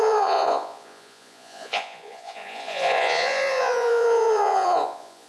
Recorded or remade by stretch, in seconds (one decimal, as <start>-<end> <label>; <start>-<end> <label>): 0.0-5.3 remade